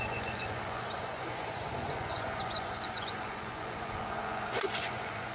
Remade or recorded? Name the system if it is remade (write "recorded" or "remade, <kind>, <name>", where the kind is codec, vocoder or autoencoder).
remade, vocoder, Vocos